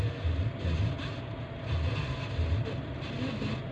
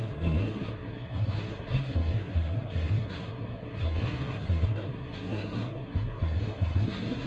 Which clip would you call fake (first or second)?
second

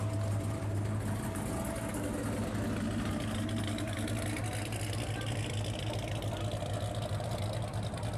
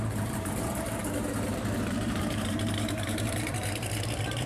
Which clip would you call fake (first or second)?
second